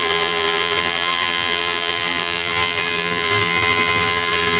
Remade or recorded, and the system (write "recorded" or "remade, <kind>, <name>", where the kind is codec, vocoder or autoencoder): remade, vocoder, BigVGAN v2